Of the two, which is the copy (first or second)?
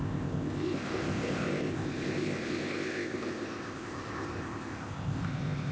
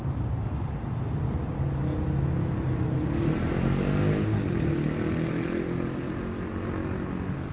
first